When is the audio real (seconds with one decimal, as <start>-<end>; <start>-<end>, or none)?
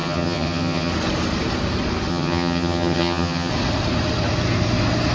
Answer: 0.9-2.1; 3.5-5.1